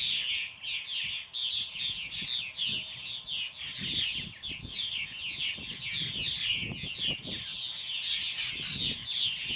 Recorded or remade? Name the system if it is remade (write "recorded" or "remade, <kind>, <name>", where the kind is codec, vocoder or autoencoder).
recorded